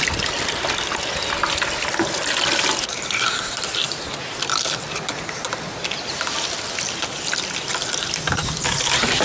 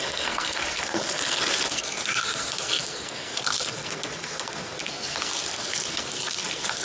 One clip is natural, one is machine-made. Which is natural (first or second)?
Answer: first